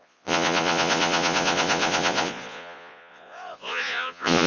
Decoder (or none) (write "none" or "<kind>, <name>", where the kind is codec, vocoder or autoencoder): vocoder, Vocos